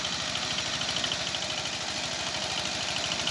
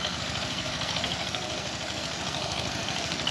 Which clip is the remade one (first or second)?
second